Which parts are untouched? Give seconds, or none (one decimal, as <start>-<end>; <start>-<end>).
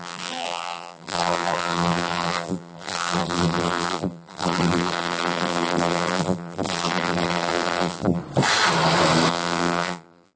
8.2-9.3